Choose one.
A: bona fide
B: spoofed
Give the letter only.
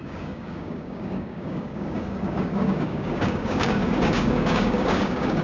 B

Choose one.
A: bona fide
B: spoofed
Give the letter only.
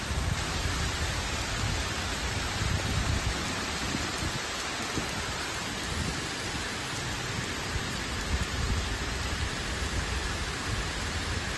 A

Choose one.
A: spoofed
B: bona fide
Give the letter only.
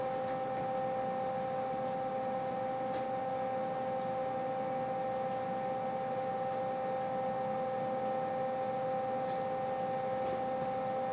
B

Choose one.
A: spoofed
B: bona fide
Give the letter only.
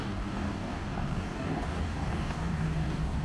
A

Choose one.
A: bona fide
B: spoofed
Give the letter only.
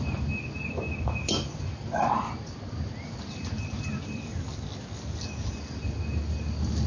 A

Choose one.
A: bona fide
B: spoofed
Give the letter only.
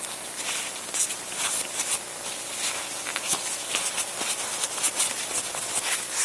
A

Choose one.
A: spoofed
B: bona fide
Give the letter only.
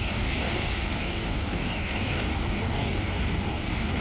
A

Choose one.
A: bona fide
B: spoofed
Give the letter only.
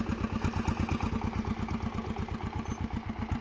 A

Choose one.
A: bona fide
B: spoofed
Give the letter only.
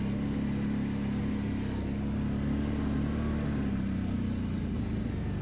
A